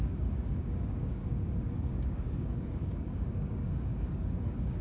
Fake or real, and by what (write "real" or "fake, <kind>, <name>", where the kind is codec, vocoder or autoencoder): fake, codec, DAC